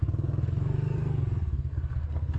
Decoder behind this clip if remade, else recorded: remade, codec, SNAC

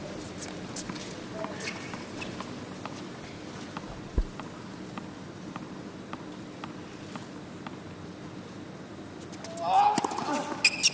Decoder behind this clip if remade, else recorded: recorded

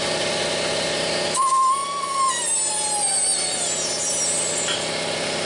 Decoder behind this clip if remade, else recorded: recorded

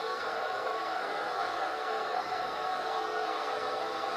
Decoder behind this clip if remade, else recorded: remade, codec, SNAC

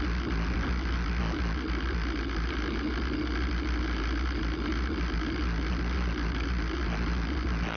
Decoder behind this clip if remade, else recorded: recorded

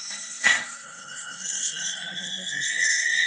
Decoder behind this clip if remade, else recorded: remade, codec, SNAC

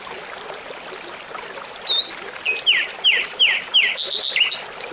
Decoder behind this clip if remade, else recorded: recorded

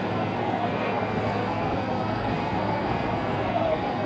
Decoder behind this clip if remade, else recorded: remade, codec, SNAC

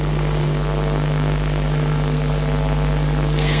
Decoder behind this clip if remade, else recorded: remade, codec, SNAC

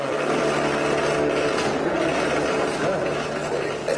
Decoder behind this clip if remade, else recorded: recorded